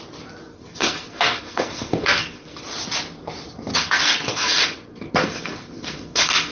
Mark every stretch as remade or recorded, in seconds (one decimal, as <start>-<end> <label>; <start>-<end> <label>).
0.0-0.5 recorded; 0.5-2.6 remade; 2.6-3.7 recorded; 3.7-6.5 remade